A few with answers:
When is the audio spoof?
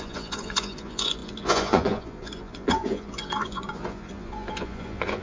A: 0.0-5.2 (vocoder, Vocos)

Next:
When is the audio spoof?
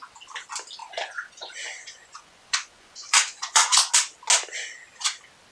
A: 0.8-3.9 (vocoder, Vocos)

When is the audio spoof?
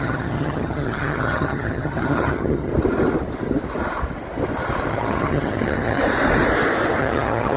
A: 0.0-2.7 (vocoder, HiFi-GAN); 4.9-6.0; 7.0-7.6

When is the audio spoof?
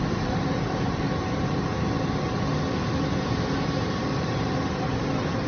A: 0.0-5.5 (vocoder, BigVGAN v2)